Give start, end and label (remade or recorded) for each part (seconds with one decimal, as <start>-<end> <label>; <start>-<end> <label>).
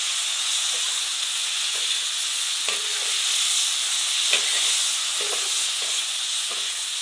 0.0-3.0 remade; 3.0-4.5 recorded; 4.5-7.0 remade